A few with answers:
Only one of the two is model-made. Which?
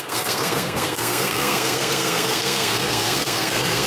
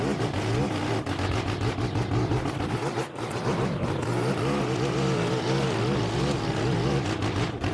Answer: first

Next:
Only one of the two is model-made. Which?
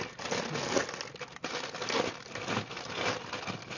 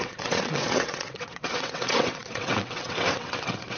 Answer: second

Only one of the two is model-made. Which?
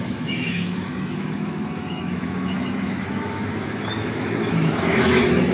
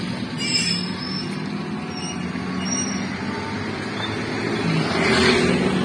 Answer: first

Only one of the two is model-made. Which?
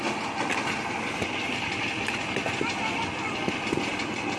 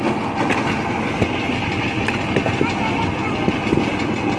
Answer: first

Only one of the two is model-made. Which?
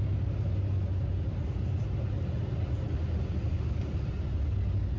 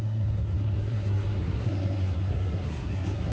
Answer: second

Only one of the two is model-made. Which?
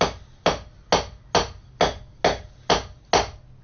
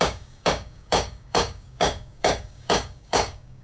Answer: second